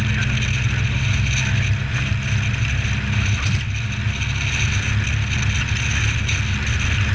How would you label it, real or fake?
real